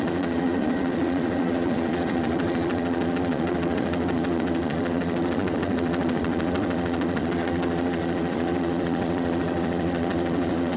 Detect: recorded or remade remade